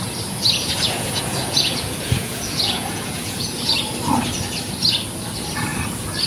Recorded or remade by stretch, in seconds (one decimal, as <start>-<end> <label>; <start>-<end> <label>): 0.0-0.6 recorded; 0.6-3.7 remade; 3.7-6.3 recorded